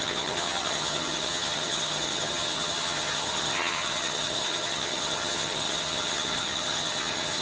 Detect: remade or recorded remade